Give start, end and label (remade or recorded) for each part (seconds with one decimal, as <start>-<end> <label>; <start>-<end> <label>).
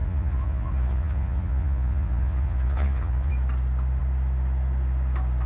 0.0-3.3 remade; 3.3-5.5 recorded